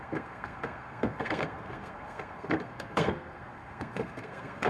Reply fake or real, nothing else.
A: fake